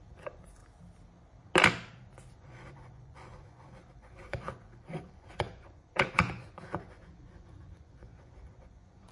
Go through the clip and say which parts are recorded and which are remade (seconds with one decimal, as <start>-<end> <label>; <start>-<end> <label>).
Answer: 0.0-0.6 remade; 0.6-2.3 recorded; 2.3-9.1 remade